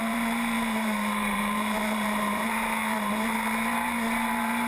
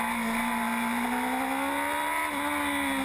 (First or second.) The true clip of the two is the second